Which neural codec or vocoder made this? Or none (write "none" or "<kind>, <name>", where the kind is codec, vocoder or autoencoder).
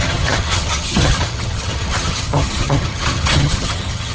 vocoder, HiFi-GAN